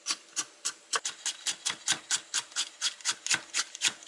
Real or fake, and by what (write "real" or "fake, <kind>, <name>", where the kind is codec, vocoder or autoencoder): real